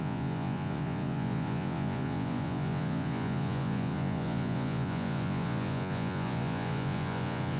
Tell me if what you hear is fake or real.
fake